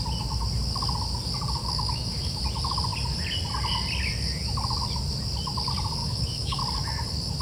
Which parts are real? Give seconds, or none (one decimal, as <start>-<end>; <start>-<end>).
0.0-1.6; 2.4-6.0; 6.6-7.4